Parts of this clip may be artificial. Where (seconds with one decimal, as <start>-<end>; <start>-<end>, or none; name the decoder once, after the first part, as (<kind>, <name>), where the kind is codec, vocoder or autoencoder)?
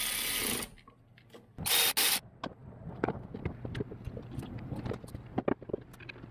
none